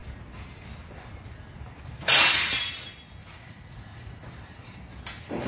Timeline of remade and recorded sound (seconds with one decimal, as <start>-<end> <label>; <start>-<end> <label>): 0.0-3.2 recorded; 3.2-4.7 remade; 4.7-5.5 recorded